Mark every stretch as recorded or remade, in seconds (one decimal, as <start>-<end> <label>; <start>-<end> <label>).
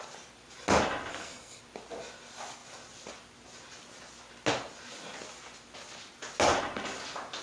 0.0-1.1 recorded; 1.1-1.6 remade; 1.6-7.4 recorded